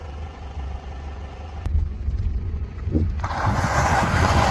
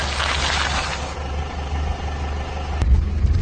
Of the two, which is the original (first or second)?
second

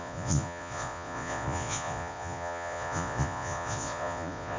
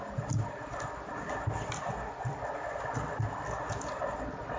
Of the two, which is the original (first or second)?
second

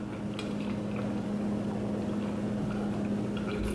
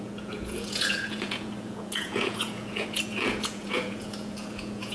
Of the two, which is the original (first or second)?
first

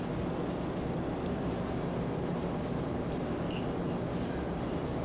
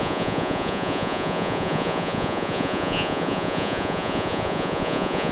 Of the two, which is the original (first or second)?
first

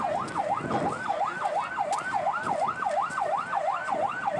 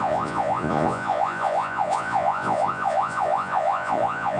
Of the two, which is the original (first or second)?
first